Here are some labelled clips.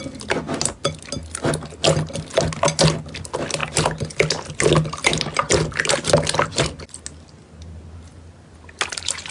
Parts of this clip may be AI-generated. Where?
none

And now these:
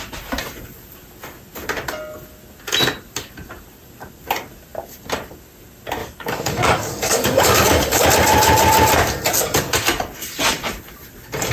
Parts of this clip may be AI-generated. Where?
6.0-8.1 (codec, DAC)

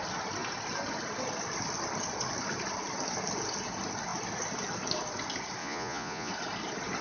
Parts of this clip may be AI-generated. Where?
5.6-6.3 (vocoder, Vocos)

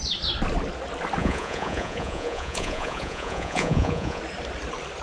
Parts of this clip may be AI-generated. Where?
1.2-4.2 (vocoder, Vocos)